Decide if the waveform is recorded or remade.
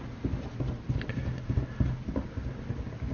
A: recorded